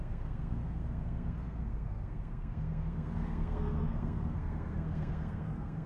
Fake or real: fake